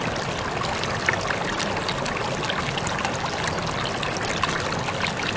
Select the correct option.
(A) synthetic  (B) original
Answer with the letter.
B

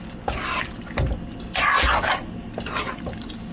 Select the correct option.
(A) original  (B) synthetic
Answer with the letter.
A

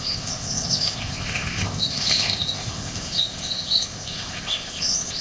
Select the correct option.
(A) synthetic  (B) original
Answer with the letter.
A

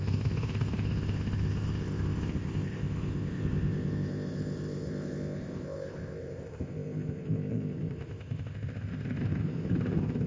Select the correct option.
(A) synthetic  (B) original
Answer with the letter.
A